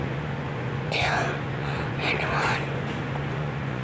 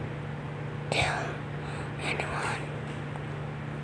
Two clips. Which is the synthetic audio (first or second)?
first